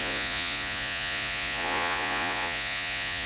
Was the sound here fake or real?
fake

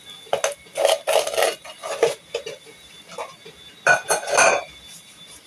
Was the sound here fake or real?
real